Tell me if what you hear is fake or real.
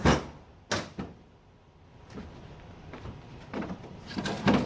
real